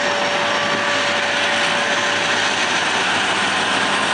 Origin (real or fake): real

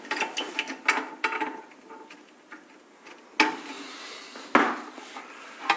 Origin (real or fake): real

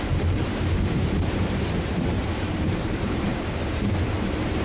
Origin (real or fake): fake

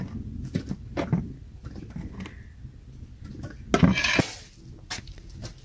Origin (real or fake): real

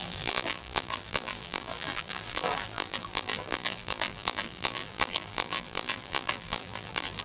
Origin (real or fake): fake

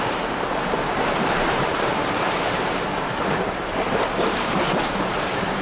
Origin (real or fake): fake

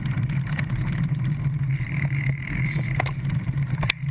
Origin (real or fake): fake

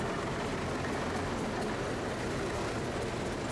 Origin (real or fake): real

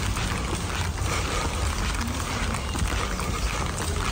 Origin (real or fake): real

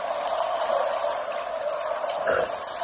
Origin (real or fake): fake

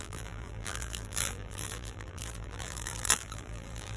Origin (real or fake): fake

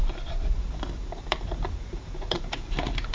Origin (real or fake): fake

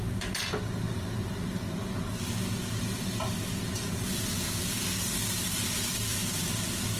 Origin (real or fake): real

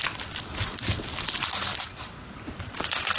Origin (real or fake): real